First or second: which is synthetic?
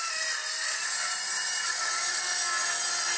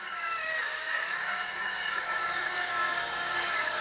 second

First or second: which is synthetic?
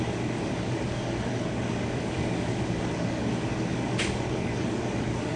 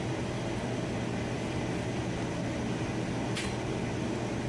first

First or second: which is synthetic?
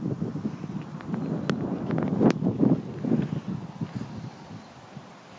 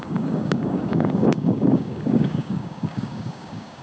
second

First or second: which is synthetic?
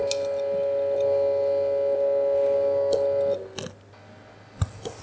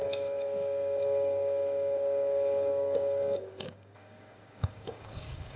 second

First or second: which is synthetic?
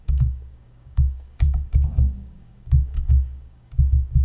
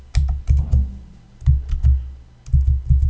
first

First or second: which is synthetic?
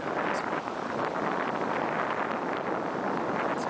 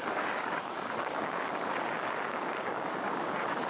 second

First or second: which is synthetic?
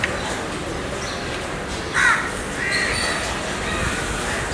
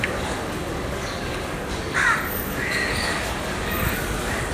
second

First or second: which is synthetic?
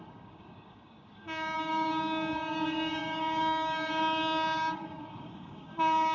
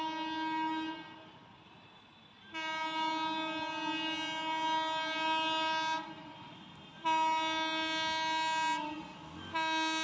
first